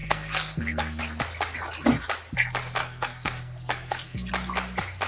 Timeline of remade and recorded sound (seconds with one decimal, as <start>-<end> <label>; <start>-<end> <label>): 0.0-1.0 remade; 1.0-2.8 recorded; 2.8-4.3 remade; 4.3-5.1 recorded